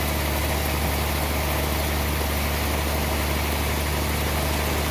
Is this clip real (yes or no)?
yes